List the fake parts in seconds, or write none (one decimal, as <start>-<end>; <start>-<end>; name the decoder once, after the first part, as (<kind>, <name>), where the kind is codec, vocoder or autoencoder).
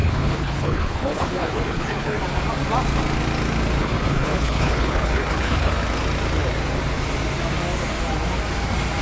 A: 0.0-2.2 (codec, HILCodec); 3.8-5.7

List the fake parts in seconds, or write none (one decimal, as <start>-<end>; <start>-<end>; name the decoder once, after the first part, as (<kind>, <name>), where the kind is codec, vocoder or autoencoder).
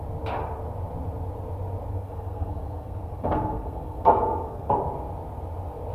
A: 1.9-4.7 (codec, SNAC)